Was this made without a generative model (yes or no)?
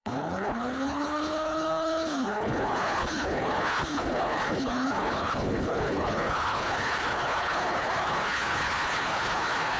no